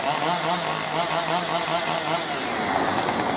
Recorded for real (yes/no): yes